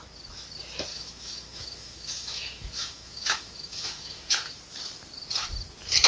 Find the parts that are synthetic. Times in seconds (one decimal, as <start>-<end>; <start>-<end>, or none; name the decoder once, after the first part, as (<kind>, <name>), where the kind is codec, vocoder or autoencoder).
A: 0.9-4.6 (autoencoder, DAC-VAE)

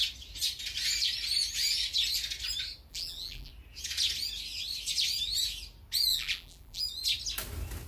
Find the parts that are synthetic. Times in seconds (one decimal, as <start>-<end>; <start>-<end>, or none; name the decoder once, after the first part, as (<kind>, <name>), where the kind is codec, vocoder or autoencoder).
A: 2.9-3.5 (vocoder, BigVGAN v2); 6.1-6.8

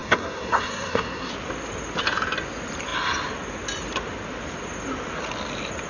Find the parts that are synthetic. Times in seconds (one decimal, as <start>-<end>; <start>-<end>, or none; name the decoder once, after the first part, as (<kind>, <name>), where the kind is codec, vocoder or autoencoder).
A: 0.0-1.3 (codec, SNAC)

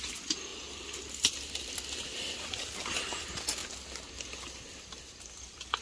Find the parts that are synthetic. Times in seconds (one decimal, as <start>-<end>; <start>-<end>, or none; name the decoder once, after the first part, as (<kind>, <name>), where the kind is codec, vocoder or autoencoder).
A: none

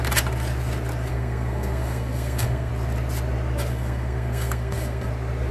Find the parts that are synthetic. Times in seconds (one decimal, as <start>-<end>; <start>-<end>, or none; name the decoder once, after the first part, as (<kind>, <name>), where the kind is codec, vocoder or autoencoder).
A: 1.1-2.7 (codec, SNAC); 3.7-5.1

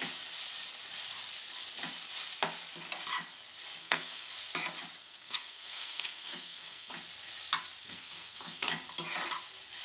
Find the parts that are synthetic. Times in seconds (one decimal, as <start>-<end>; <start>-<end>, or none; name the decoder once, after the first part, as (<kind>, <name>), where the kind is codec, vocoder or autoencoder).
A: 3.8-4.3 (codec, SNAC); 5.0-6.9; 7.8-8.7

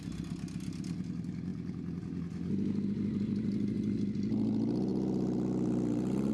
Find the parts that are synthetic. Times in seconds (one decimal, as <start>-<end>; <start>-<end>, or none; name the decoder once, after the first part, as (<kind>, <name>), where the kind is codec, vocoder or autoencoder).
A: none